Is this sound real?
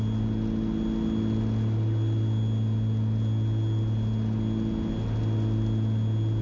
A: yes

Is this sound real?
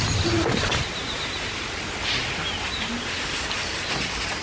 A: yes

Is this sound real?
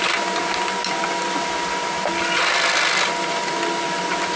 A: yes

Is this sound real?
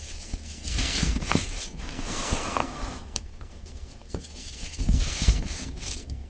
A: no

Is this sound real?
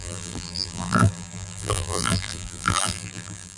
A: no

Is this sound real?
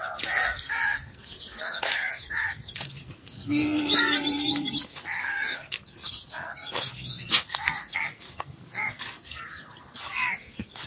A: no